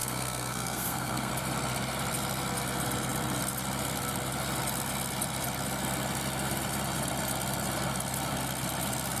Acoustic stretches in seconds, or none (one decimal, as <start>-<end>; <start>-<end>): 1.3-9.2